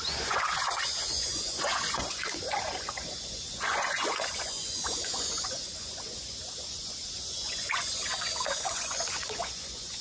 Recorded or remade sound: remade